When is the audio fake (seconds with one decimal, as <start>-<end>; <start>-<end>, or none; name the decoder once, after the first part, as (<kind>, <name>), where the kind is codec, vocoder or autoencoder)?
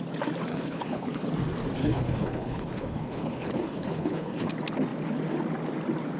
0.5-1.3 (codec, HILCodec); 1.8-4.5